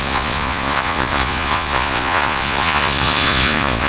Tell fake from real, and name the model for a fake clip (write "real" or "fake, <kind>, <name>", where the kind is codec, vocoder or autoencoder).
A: fake, vocoder, Vocos